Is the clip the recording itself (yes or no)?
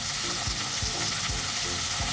yes